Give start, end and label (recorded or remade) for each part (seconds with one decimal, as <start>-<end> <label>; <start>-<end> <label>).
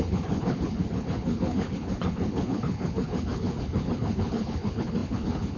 0.0-5.6 remade